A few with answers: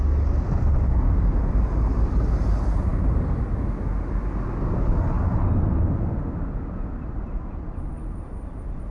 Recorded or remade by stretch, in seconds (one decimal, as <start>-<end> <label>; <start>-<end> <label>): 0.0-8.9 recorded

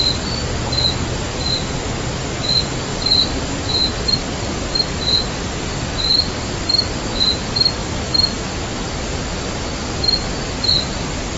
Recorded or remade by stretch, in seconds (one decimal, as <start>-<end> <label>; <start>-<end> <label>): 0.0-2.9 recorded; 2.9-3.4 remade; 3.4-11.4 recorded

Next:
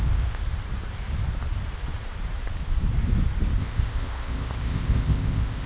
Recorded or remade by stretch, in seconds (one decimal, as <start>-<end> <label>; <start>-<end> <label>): 0.0-0.4 remade; 0.4-3.6 recorded; 3.6-5.7 remade

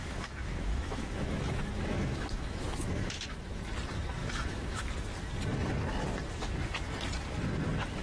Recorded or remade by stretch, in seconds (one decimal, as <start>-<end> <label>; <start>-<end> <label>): 0.0-3.6 remade; 3.6-4.2 recorded; 4.2-4.9 remade; 4.9-8.0 recorded

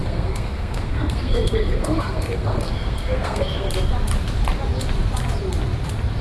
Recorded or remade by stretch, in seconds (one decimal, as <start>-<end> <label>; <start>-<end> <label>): 0.0-3.7 remade; 3.7-6.2 recorded

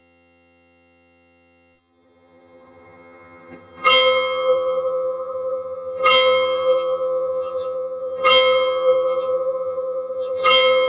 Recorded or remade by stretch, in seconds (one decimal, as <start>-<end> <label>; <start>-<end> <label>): 0.0-10.9 remade